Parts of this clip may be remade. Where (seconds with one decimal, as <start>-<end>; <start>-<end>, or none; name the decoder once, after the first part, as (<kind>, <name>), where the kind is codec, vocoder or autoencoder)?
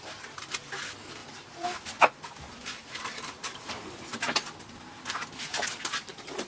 none